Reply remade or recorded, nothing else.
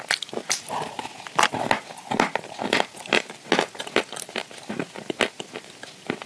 recorded